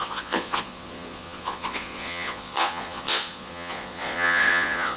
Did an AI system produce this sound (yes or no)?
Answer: yes